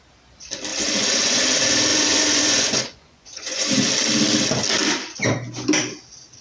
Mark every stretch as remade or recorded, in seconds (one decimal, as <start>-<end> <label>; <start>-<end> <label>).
0.0-0.7 recorded; 0.7-1.4 remade; 1.4-1.9 recorded; 1.9-3.7 remade; 3.7-6.4 recorded

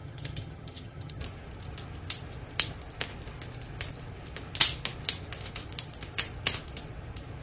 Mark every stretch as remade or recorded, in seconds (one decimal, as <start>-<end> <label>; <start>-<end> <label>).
0.0-1.2 remade; 1.2-7.4 recorded

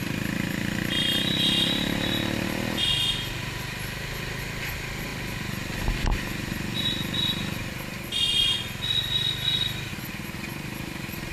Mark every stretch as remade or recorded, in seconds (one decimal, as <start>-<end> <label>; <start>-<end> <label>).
0.0-11.3 recorded

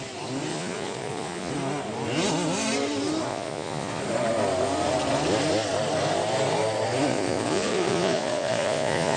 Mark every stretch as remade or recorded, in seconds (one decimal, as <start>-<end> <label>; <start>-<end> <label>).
0.0-0.5 recorded; 0.5-1.5 remade; 1.5-3.3 recorded; 3.3-4.0 remade; 4.0-7.1 recorded; 7.1-9.2 remade

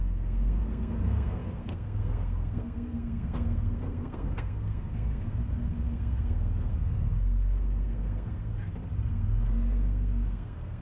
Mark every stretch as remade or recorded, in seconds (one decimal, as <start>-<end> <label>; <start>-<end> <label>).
0.0-8.5 remade; 8.5-9.1 recorded; 9.1-10.8 remade

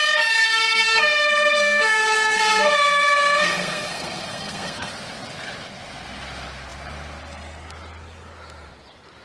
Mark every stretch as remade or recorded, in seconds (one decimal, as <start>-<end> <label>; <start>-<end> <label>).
0.0-0.4 recorded; 0.4-4.9 remade; 4.9-9.2 recorded

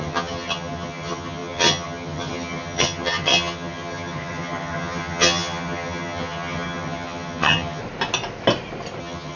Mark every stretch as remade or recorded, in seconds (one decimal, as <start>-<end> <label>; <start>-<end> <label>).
0.0-7.8 remade; 7.8-9.0 recorded; 9.0-9.4 remade